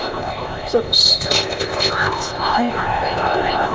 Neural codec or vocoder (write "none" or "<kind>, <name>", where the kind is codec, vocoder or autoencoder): codec, ZipCodec